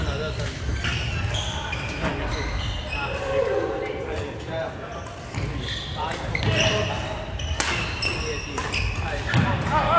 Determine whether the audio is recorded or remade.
recorded